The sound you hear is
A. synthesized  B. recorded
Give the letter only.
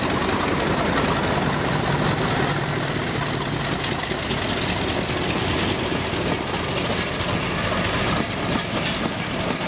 B